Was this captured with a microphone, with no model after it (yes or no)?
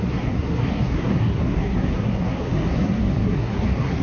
no